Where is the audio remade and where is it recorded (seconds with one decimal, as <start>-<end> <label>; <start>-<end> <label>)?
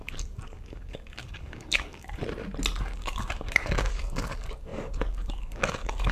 0.0-2.2 remade; 2.2-2.8 recorded; 2.8-6.1 remade